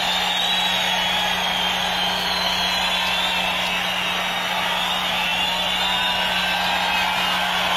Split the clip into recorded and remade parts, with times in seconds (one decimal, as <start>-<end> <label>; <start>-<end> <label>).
0.0-7.8 recorded